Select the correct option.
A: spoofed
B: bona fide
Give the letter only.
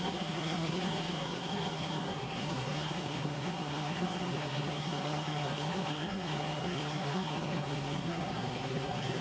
A